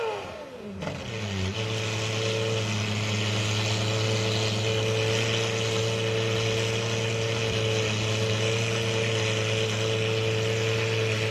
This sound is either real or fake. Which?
real